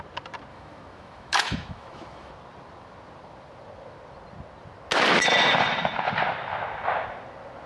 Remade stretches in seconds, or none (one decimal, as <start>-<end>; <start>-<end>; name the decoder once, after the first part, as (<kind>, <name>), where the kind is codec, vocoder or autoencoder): 0.5-2.3 (autoencoder, DAC-VAE)